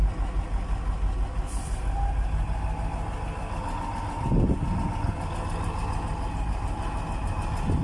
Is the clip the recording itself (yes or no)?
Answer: yes